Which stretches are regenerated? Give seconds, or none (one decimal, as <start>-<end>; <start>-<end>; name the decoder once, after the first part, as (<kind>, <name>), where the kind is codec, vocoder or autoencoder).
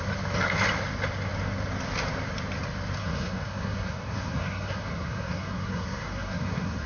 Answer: 3.0-6.9 (codec, SNAC)